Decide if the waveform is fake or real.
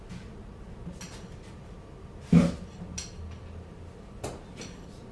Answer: real